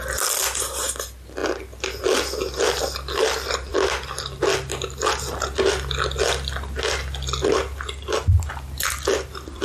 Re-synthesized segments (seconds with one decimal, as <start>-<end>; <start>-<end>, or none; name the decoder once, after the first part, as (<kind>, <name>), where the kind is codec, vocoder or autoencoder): none